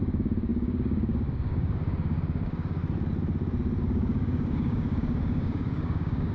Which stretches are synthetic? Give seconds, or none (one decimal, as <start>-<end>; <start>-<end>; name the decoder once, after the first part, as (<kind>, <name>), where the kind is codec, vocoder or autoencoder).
0.0-2.8 (codec, DAC); 3.8-6.3